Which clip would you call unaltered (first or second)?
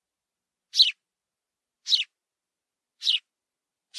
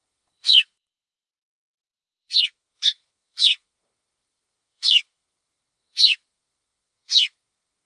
first